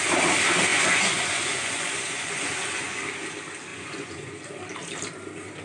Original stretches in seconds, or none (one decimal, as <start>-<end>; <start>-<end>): 0.0-0.7; 3.0-3.7; 4.4-5.6